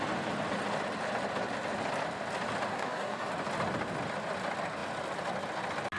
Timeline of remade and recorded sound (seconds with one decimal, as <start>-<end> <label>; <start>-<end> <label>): 0.0-2.7 recorded; 2.7-3.3 remade; 3.3-6.0 recorded